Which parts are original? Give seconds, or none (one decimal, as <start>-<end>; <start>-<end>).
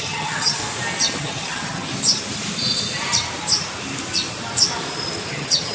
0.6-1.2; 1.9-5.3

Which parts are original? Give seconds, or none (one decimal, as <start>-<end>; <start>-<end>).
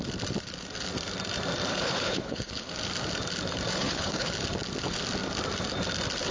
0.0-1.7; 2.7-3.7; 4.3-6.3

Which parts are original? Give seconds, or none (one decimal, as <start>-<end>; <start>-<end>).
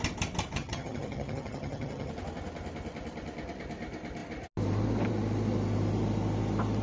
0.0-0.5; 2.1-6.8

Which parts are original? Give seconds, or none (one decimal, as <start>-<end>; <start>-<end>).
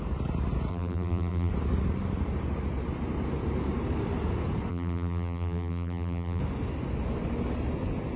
0.0-0.7; 1.5-4.7; 6.4-8.2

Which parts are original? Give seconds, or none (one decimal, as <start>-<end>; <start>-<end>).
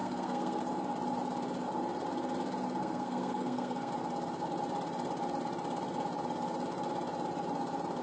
0.6-2.8; 3.9-8.0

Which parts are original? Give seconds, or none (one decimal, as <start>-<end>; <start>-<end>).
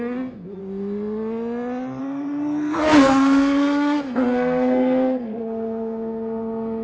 0.6-2.0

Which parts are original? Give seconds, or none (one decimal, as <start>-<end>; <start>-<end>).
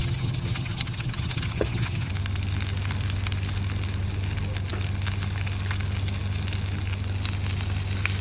2.1-8.2